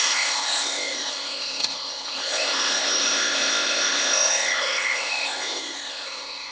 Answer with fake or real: fake